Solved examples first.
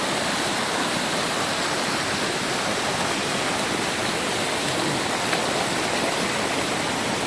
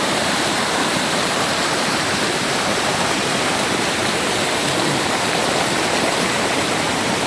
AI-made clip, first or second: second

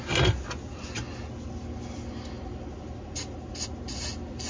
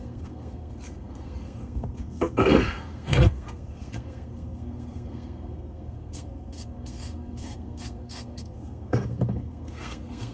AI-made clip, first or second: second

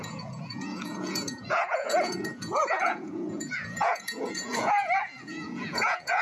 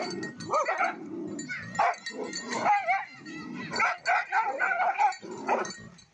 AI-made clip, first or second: first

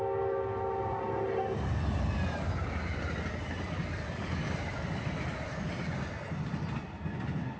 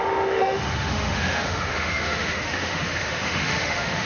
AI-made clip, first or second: second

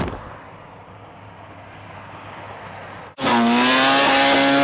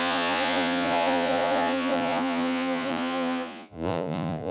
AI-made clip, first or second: second